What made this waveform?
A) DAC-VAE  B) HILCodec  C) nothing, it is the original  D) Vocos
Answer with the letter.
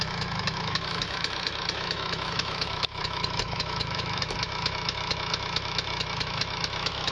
A